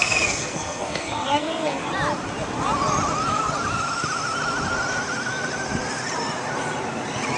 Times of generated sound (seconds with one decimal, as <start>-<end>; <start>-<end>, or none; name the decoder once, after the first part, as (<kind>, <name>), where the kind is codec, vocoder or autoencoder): 0.0-1.8 (codec, SNAC)